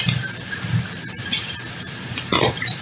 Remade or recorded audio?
remade